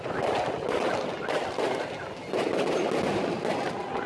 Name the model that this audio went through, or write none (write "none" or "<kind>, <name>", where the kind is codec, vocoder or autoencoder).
none